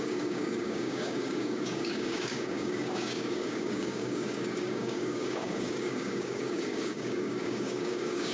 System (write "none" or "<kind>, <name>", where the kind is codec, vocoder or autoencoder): codec, DAC